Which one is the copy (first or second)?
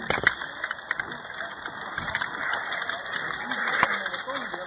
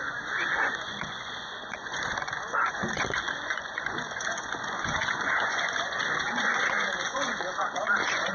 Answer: second